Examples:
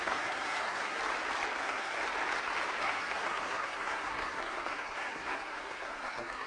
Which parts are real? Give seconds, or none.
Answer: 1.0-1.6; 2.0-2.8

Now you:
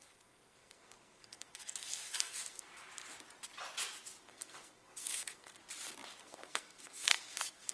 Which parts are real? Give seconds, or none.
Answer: 2.9-4.2; 5.6-6.2